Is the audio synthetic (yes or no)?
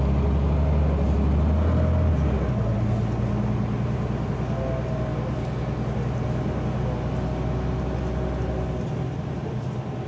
no